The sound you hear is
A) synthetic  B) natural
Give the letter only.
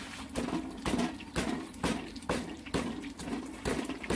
B